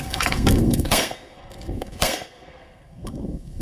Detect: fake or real fake